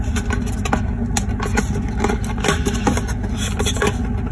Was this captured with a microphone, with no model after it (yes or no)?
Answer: yes